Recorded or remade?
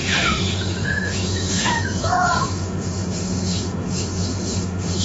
remade